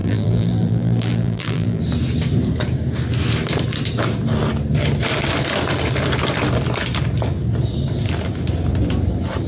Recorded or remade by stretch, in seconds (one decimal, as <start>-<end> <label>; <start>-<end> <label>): 0.0-1.8 remade; 1.8-9.5 recorded